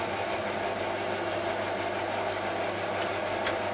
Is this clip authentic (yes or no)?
yes